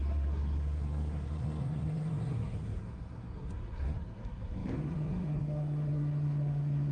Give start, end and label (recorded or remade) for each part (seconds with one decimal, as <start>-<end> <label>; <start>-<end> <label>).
0.0-6.9 remade